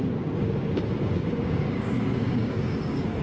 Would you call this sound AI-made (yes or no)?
yes